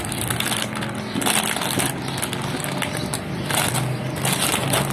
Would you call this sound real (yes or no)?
yes